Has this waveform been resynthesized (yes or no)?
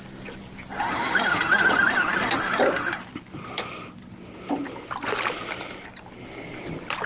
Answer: no